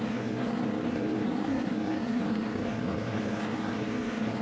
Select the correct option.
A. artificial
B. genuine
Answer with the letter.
A